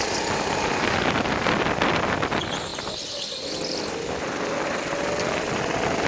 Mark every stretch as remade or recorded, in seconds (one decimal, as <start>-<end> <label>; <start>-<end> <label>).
0.0-6.1 recorded